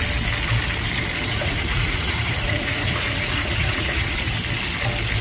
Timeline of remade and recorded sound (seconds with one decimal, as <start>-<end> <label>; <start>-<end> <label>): 0.0-1.3 recorded; 1.3-4.4 remade; 4.4-5.2 recorded

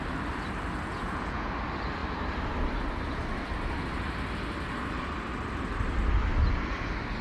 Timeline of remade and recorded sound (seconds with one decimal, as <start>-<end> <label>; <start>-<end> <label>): 0.0-0.9 recorded; 0.9-1.5 remade; 1.5-7.2 recorded

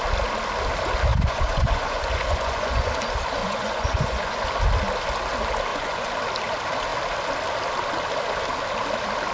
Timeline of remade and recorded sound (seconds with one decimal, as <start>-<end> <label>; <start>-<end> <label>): 0.0-1.1 recorded; 1.1-2.9 remade; 2.9-3.4 recorded; 3.4-4.4 remade; 4.4-5.7 recorded; 5.7-6.2 remade; 6.2-9.3 recorded

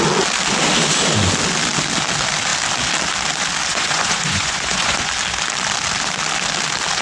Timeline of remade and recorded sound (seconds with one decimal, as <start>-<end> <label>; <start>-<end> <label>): 0.0-3.7 recorded; 3.7-5.1 remade; 5.1-7.0 recorded

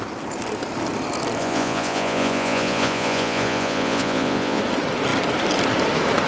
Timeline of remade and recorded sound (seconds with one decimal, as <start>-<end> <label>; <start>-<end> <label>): 0.0-1.4 recorded; 1.4-4.6 remade; 4.6-6.3 recorded

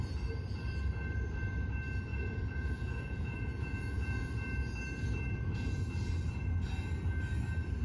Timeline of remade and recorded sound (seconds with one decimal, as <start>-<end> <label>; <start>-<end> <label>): 0.0-2.1 recorded; 2.1-4.3 remade; 4.3-7.8 recorded

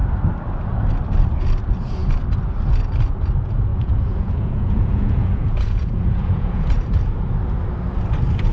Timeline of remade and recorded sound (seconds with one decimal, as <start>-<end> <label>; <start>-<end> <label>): 0.0-3.7 recorded; 3.7-6.7 remade; 6.7-8.5 recorded

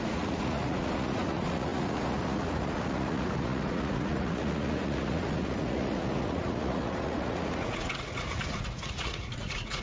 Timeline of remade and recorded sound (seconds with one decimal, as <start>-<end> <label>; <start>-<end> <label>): 0.0-9.8 remade